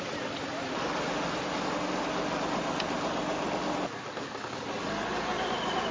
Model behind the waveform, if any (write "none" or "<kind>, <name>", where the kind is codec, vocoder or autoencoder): none